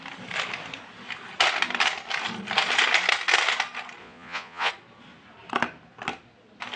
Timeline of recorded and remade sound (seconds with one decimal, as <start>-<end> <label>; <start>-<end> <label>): 0.0-4.0 recorded; 4.0-4.7 remade; 4.7-6.8 recorded